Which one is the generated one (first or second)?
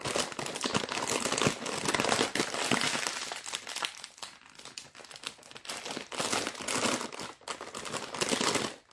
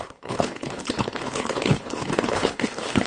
second